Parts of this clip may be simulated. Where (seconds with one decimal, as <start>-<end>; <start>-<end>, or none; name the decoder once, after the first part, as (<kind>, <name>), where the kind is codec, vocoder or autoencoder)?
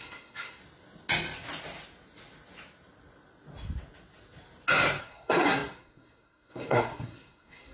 0.0-0.6 (codec, SNAC); 5.0-7.7